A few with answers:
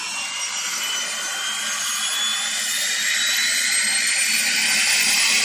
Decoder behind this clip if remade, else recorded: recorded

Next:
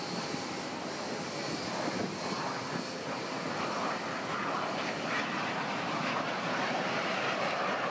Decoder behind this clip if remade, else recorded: recorded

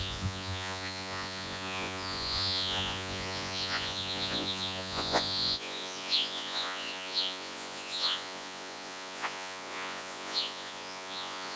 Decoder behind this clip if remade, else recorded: remade, vocoder, Vocos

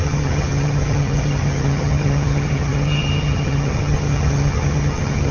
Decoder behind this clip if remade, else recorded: remade, vocoder, HiFi-GAN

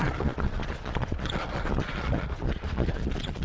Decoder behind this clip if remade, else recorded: remade, vocoder, Vocos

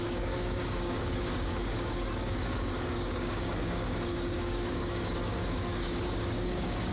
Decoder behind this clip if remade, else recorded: remade, codec, DAC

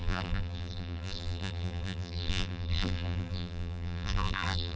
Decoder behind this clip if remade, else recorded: remade, vocoder, BigVGAN v2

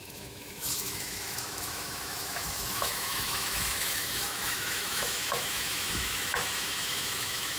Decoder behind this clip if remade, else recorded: remade, autoencoder, DAC-VAE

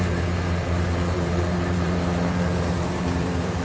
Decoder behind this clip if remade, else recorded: remade, vocoder, BigVGAN v2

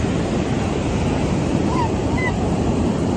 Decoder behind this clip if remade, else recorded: remade, vocoder, BigVGAN v2